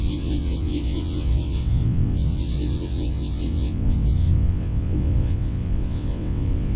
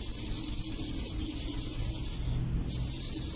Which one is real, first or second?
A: second